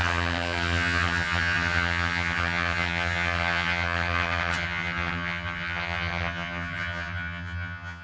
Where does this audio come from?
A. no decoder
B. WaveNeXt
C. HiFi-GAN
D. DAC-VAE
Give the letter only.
C